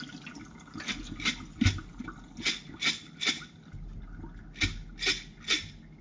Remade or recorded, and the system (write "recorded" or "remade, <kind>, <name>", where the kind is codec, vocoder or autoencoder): recorded